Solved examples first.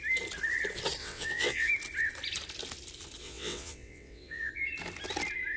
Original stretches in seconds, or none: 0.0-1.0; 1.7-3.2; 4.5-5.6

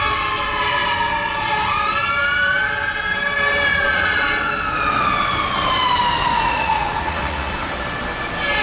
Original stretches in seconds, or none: 0.0-3.7; 4.2-6.2; 7.5-8.6

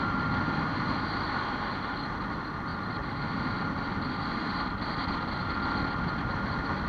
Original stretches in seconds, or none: 0.0-6.9

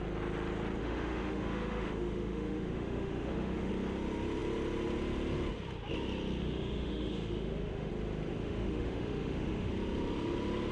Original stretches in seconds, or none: 0.0-0.8; 3.7-6.4; 7.9-8.3; 9.7-10.7

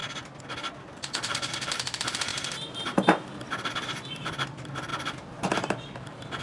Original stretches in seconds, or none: 0.0-0.8; 2.3-3.7

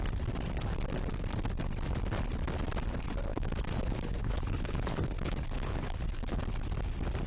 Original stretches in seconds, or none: 0.0-3.3; 6.4-7.3